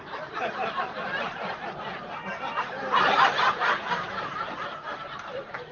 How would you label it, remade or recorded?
recorded